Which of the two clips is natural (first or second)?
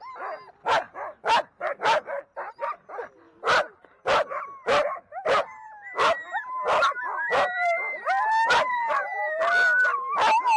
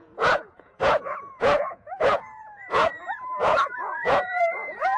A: first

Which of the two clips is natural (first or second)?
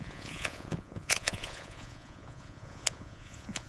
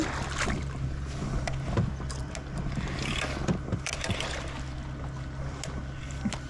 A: second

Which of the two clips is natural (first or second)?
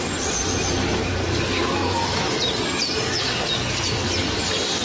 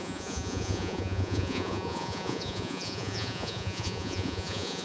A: first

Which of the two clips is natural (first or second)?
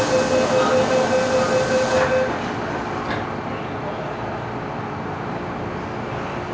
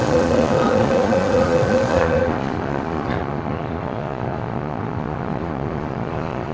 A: first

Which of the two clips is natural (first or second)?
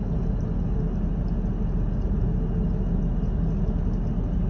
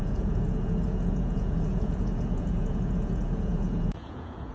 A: first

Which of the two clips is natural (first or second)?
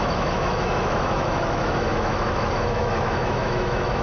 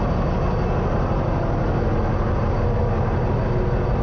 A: second